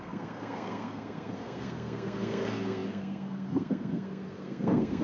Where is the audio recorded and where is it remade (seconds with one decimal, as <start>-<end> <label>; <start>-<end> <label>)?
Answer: 0.0-5.0 remade